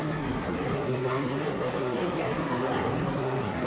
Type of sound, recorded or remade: remade